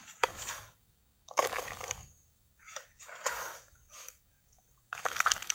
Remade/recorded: remade